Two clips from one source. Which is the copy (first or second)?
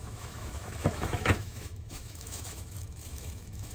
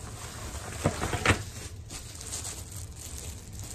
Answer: first